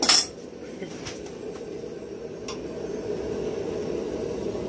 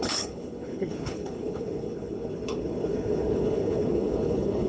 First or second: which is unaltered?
first